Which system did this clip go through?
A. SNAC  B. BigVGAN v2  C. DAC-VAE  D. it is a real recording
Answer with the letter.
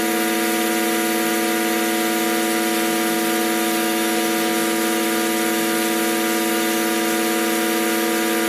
D